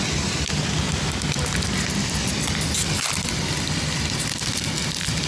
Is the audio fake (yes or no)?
no